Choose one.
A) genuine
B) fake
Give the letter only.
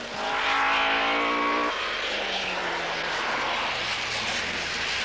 A